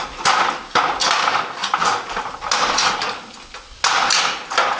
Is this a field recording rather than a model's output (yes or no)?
yes